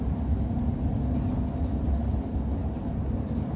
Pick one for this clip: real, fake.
real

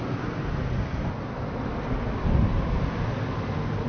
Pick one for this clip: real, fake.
real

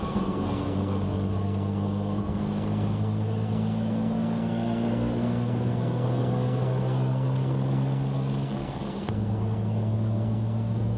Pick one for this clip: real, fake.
fake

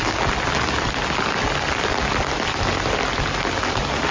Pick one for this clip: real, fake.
real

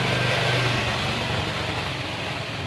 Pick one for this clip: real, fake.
real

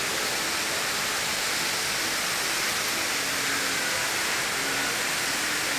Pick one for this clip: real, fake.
real